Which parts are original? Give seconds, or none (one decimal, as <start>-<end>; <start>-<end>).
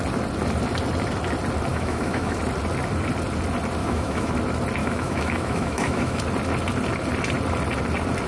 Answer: 0.0-1.7; 2.4-3.8; 4.3-4.8; 6.2-8.3